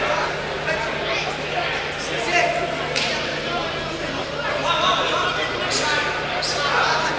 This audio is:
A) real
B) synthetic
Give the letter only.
A